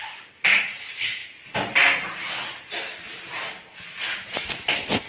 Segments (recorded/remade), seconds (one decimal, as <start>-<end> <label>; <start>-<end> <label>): 0.0-5.1 recorded